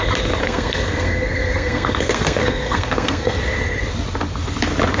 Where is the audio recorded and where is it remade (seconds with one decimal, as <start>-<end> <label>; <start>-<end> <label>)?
0.0-0.4 recorded; 0.4-3.4 remade; 3.4-5.0 recorded